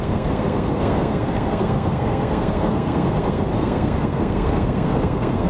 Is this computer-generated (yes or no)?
yes